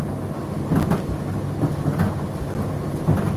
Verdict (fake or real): real